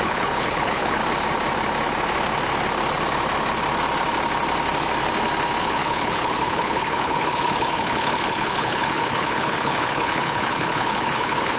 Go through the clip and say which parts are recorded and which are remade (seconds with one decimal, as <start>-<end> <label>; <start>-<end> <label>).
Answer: 0.0-1.0 remade; 1.0-5.6 recorded; 5.6-11.6 remade